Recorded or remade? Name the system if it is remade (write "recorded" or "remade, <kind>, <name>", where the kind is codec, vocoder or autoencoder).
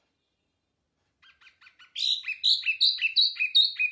recorded